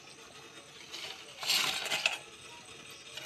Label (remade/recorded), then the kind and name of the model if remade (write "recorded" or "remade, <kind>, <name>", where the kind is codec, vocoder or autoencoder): recorded